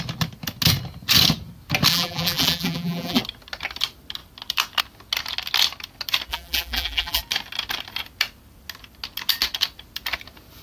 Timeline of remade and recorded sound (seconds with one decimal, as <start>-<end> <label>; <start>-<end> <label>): 0.0-1.9 recorded; 1.9-3.2 remade; 3.2-6.3 recorded; 6.3-7.2 remade; 7.2-10.6 recorded